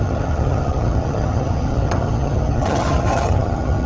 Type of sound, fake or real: fake